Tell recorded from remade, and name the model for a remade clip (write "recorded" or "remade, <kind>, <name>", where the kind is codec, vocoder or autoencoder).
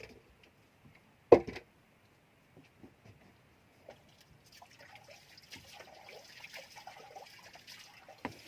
recorded